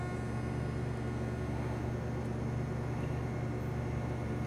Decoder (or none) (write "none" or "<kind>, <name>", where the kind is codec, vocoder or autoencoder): none